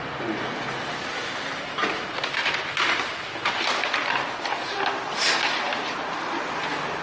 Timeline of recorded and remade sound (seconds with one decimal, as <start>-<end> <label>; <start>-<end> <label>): 0.0-7.0 recorded